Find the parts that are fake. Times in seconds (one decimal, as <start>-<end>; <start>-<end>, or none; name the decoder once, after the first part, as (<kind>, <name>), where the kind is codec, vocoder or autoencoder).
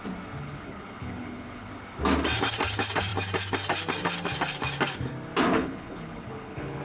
0.4-1.7 (codec, HILCodec); 5.5-6.8